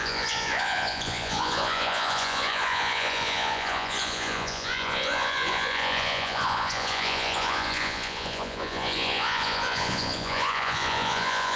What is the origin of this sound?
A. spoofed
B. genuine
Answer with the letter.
A